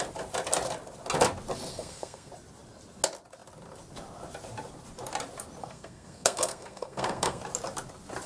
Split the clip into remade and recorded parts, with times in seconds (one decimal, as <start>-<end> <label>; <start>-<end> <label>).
0.0-1.7 recorded; 1.7-2.3 remade; 2.3-5.6 recorded; 5.6-7.4 remade; 7.4-8.3 recorded